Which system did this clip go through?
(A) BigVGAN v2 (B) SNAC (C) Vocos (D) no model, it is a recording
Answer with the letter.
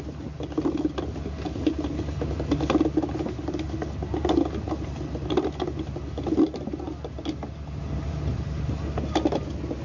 D